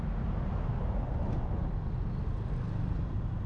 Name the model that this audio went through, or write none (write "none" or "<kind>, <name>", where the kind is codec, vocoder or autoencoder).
none